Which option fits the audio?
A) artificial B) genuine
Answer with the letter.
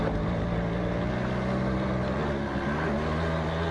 B